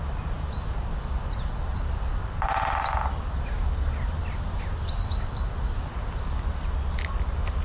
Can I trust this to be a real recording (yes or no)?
yes